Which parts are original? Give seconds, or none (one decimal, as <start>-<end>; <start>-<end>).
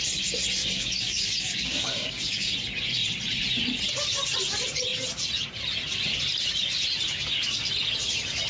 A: 0.0-0.6; 2.5-8.5